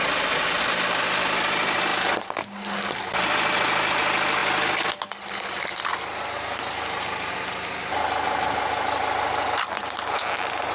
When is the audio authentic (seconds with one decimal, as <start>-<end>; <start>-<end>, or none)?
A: 0.6-10.7